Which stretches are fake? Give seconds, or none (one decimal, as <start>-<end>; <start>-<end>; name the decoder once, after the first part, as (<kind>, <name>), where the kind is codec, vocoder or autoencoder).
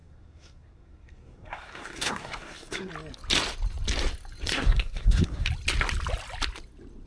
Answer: 0.0-2.9 (codec, SNAC); 4.5-5.5